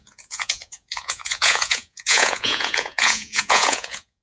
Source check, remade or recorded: remade